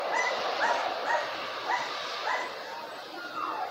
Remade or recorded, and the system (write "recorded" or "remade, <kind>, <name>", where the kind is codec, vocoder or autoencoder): recorded